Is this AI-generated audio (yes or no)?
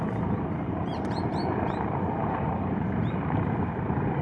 yes